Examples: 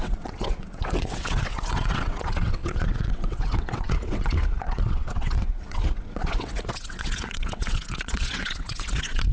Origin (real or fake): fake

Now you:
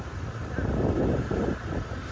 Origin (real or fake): real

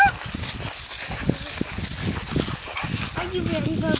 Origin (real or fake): real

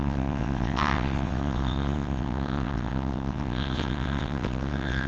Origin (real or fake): fake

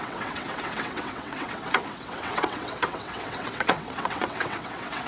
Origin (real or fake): fake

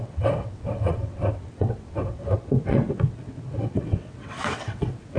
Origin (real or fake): fake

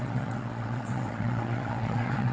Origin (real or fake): fake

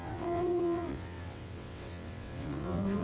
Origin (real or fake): fake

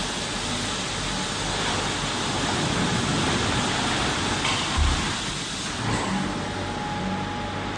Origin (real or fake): real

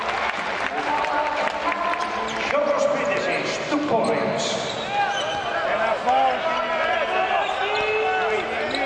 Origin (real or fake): real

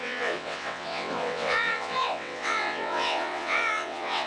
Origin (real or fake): fake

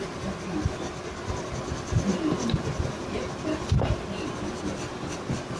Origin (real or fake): real